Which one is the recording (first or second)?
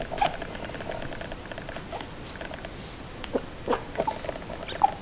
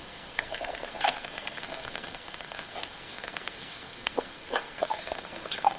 first